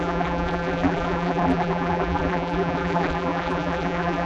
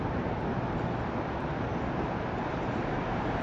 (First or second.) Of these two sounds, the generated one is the first